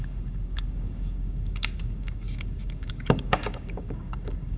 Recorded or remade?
remade